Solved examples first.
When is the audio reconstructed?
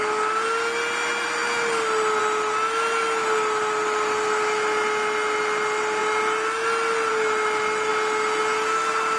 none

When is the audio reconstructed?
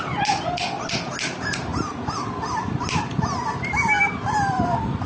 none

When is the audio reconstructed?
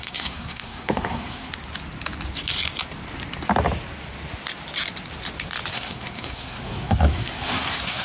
0.0-1.5 (codec, SNAC); 5.7-8.0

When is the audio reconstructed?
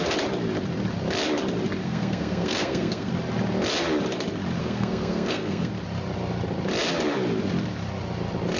1.8-3.1 (codec, SNAC); 4.6-5.7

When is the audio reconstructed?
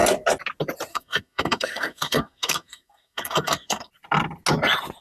0.9-3.9 (codec, SNAC)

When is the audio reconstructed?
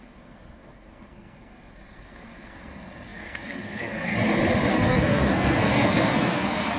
0.0-4.1 (codec, SNAC); 4.7-6.8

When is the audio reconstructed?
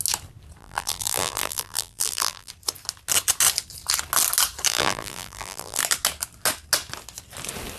0.6-2.5 (vocoder, BigVGAN v2); 4.7-5.8